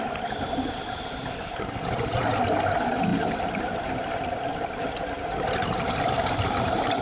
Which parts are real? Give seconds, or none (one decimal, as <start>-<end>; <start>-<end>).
0.0-7.0